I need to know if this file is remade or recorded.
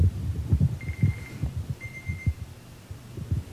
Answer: recorded